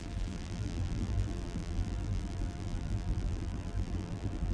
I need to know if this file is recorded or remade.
remade